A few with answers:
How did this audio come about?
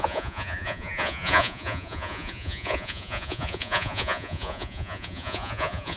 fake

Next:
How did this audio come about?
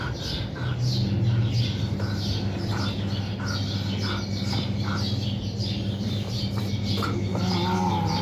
real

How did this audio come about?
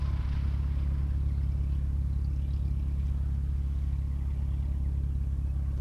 real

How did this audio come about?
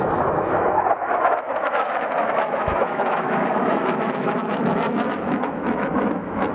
fake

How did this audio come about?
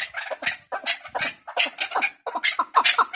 real